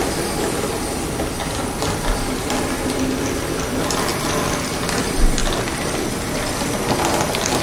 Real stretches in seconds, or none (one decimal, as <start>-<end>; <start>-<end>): 0.0-7.6

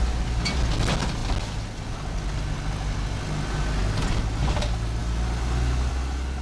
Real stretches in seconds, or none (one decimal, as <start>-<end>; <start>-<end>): 0.0-6.4

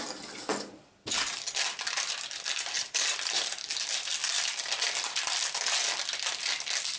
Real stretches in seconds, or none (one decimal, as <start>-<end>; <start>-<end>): 0.0-2.8; 3.5-4.2; 5.2-7.0

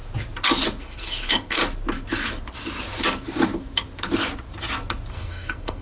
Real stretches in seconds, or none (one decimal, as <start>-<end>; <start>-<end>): 0.0-0.8; 1.6-5.1

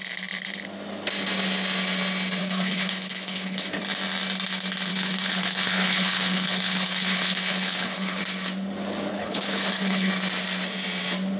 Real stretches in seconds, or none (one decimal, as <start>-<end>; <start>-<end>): 0.0-2.4; 3.8-4.9; 8.2-9.1; 10.1-11.4

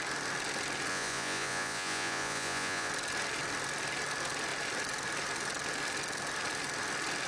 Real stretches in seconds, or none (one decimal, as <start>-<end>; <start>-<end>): 0.0-0.9; 2.9-7.3

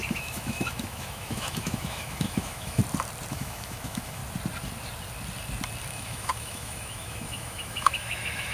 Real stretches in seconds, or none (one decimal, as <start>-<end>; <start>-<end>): 2.8-3.3; 4.2-5.9